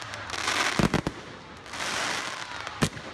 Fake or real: real